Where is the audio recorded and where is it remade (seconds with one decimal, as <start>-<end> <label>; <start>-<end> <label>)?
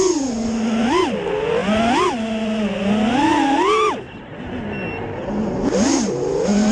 0.0-6.7 recorded